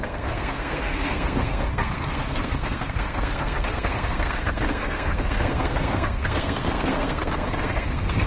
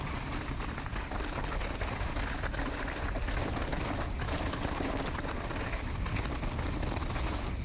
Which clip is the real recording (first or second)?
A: second